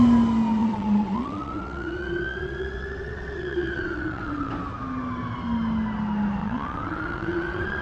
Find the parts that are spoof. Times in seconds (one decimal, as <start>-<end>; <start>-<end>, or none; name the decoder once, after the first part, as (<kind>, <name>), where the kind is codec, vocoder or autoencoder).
0.6-4.5 (vocoder, WaveNeXt); 6.4-7.8